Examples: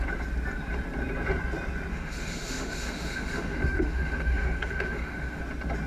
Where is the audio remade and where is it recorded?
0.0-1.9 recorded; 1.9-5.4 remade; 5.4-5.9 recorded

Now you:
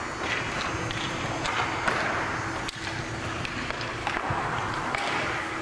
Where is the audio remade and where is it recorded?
0.0-4.0 recorded; 4.0-5.6 remade

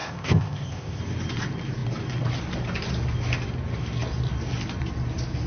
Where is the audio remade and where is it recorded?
0.0-1.0 remade; 1.0-5.5 recorded

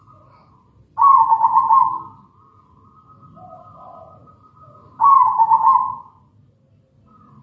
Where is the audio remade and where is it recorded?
0.0-7.4 recorded